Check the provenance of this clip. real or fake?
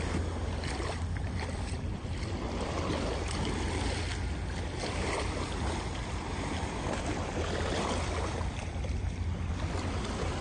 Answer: real